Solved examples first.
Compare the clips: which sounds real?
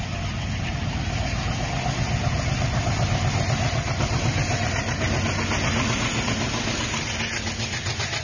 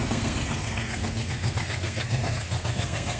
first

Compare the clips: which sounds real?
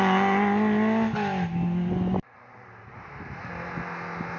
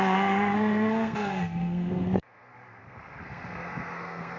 first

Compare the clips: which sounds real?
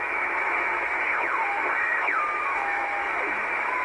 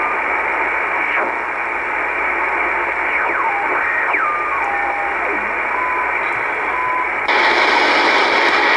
second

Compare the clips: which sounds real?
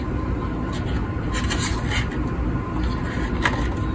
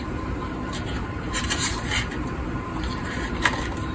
first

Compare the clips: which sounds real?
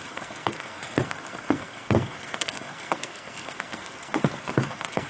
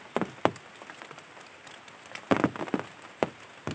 second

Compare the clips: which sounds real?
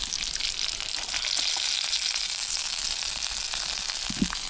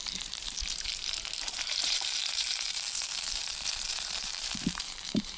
first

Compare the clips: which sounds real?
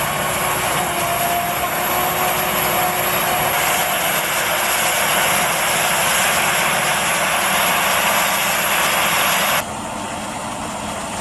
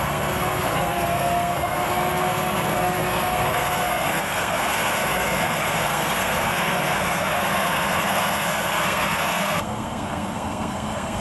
first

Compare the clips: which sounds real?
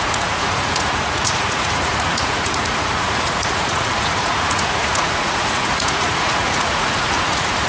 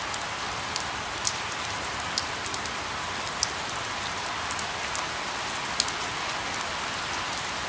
second